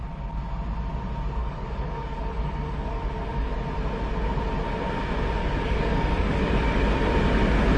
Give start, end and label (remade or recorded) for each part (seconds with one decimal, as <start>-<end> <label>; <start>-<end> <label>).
0.0-1.4 recorded; 1.4-3.5 remade; 3.5-5.4 recorded; 5.4-6.4 remade; 6.4-7.8 recorded

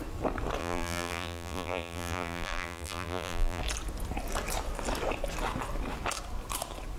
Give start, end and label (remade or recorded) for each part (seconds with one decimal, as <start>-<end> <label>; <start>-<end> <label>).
0.0-0.6 recorded; 0.6-3.6 remade; 3.6-7.0 recorded

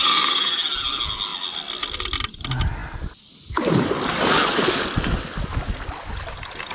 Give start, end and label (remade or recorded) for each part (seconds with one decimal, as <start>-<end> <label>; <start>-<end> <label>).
0.0-6.7 recorded

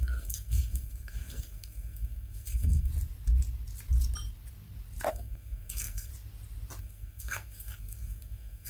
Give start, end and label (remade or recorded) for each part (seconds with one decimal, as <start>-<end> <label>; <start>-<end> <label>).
0.0-2.9 remade; 2.9-5.1 recorded; 5.1-6.1 remade; 6.1-6.8 recorded; 6.8-8.7 remade